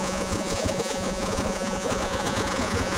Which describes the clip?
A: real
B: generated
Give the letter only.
B